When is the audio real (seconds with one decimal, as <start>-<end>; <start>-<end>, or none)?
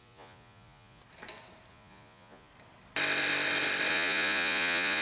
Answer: 1.0-1.7; 2.5-3.9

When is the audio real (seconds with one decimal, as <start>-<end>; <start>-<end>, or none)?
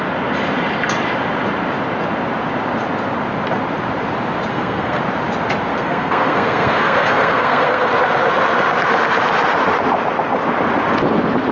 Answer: 0.0-4.5; 5.0-5.7; 7.9-11.5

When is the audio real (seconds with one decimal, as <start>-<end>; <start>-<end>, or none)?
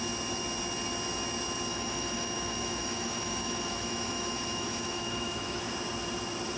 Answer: 0.0-1.7; 5.7-6.6